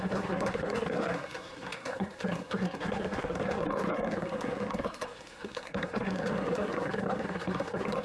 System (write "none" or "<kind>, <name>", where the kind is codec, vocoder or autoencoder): codec, SNAC